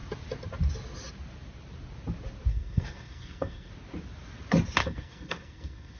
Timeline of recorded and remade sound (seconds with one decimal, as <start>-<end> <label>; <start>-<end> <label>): 0.0-2.5 recorded; 2.5-3.7 remade; 3.7-4.8 recorded; 4.8-6.0 remade